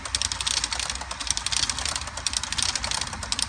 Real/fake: real